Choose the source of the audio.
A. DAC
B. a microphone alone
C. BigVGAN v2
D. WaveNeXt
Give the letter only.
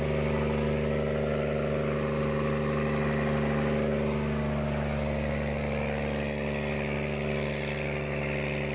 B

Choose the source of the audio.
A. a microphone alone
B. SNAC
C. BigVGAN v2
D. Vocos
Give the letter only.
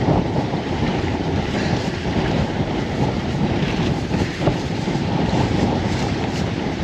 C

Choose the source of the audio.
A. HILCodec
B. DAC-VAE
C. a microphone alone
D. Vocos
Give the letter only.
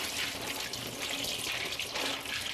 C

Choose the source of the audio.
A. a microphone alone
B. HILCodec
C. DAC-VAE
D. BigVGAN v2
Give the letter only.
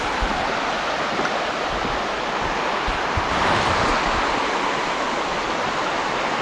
A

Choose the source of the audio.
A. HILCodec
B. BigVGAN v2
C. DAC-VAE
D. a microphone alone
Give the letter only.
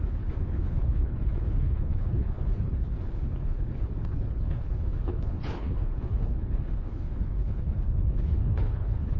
A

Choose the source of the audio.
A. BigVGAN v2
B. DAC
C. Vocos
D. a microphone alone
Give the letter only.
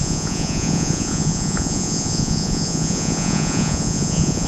C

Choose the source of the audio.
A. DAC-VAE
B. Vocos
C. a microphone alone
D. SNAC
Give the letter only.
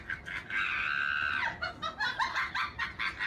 C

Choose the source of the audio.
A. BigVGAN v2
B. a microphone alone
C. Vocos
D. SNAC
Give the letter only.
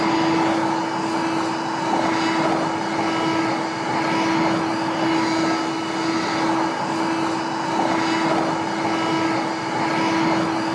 B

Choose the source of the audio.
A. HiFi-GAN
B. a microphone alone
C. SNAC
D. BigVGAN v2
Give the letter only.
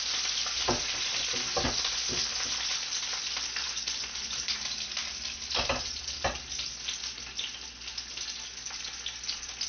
B